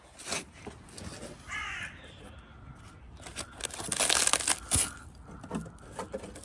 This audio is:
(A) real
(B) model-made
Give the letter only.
A